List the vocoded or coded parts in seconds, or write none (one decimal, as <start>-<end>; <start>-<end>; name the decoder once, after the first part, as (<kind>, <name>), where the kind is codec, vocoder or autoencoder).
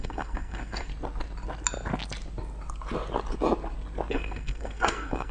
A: 0.0-0.9 (codec, SNAC); 4.1-5.3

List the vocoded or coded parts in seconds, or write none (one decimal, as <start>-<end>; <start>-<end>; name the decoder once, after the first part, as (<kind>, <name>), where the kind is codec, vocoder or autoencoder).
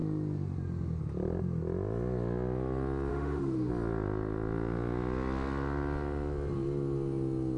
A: 3.1-3.7 (autoencoder, DAC-VAE)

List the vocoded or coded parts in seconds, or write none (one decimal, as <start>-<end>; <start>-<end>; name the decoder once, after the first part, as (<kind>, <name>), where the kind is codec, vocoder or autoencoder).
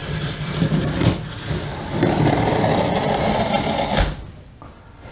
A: 0.0-1.2 (vocoder, BigVGAN v2); 1.7-3.3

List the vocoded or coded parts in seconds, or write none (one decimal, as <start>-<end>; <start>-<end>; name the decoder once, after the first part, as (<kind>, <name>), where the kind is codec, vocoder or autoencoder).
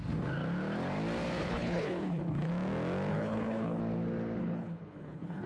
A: 1.4-2.5 (codec, HILCodec); 3.1-3.8; 4.4-5.5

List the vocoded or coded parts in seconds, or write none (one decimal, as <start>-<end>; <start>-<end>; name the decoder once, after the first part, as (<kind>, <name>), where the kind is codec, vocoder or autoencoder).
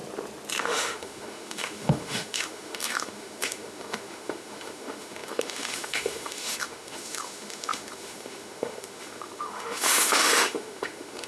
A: 0.6-11.3 (autoencoder, DAC-VAE)